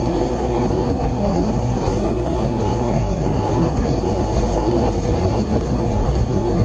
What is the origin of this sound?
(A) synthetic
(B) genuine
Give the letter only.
A